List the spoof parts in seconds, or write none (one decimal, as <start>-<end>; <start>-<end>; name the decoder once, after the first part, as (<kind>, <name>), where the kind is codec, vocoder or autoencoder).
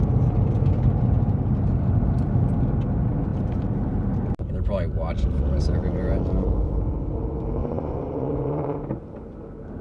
7.6-8.8 (vocoder, Vocos)